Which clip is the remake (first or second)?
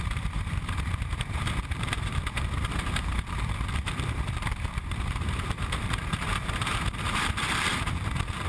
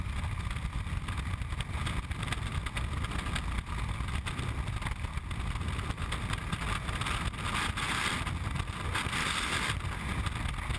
first